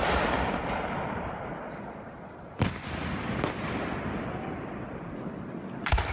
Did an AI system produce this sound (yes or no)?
yes